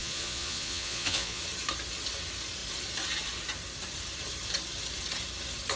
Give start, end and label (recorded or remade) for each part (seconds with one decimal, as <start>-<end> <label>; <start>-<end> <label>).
0.0-1.4 remade; 1.4-5.8 recorded